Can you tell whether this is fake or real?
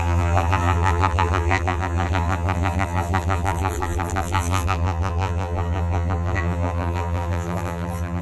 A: fake